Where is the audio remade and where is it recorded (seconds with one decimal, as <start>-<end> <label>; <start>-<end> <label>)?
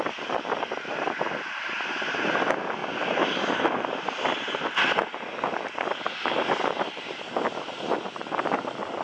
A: 0.0-9.0 recorded